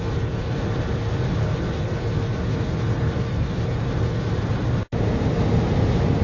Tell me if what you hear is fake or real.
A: real